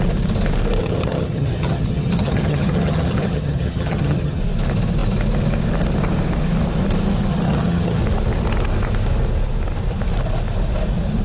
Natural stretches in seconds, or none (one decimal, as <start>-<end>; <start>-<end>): 0.0-0.8; 4.4-7.3; 8.0-11.2